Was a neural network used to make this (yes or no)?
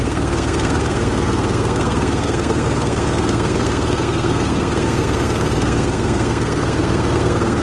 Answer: yes